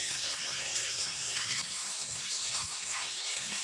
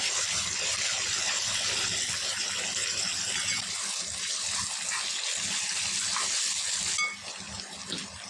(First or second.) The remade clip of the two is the first